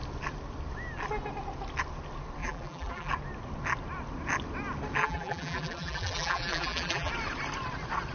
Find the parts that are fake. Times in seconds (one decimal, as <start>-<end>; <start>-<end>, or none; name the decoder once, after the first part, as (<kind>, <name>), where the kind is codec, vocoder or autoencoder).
2.4-3.1 (vocoder, BigVGAN v2); 5.0-7.1